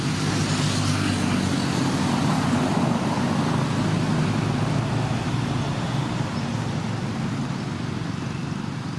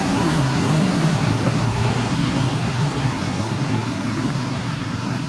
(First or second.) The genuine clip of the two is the first